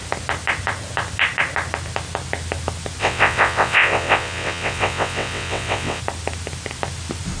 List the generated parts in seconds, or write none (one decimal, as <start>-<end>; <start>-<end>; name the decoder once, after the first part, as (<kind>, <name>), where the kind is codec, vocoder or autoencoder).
3.0-6.0 (vocoder, WaveNeXt)